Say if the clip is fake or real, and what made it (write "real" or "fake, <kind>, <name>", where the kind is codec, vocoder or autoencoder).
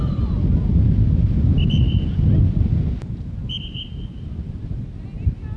real